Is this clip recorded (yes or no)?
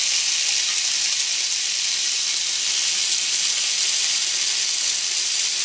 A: yes